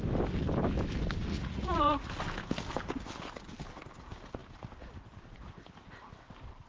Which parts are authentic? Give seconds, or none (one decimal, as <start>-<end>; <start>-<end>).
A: 0.0-1.3; 2.1-6.7